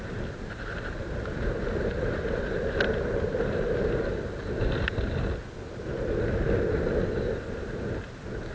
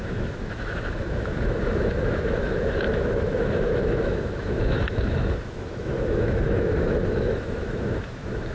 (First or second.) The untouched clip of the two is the first